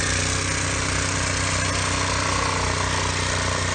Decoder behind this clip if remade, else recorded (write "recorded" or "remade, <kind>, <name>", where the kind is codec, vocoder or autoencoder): recorded